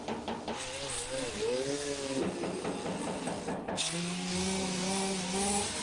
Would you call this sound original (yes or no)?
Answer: yes